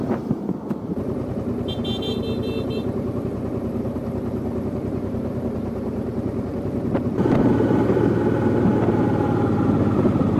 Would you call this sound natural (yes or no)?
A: no